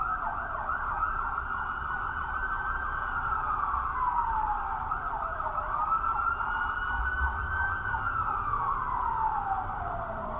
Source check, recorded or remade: remade